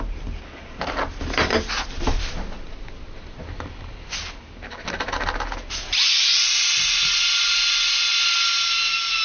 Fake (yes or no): no